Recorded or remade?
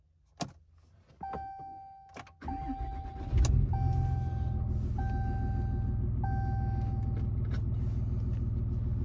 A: recorded